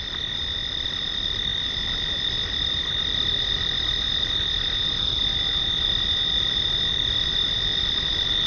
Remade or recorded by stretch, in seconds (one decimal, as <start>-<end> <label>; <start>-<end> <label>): 0.0-8.5 recorded